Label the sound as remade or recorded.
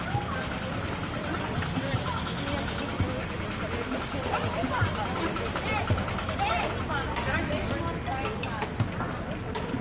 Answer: recorded